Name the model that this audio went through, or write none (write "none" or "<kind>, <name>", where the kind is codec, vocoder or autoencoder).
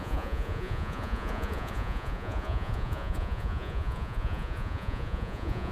vocoder, Vocos